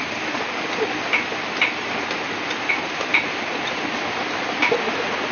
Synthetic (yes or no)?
yes